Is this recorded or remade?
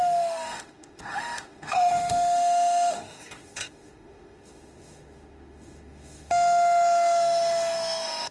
remade